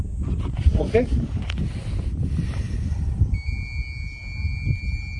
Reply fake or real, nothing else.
real